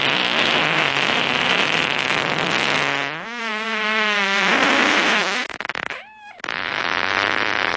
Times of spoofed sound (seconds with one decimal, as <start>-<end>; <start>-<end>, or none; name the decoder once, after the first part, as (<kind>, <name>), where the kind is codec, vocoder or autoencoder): 0.0-2.1 (vocoder, BigVGAN v2); 3.4-7.8